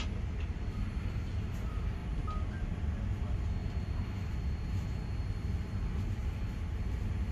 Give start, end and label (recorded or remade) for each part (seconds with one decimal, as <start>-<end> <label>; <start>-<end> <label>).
0.0-7.3 recorded